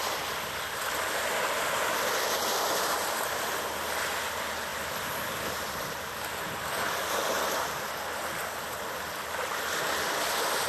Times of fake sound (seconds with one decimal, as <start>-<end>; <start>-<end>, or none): none